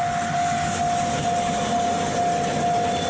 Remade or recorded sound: recorded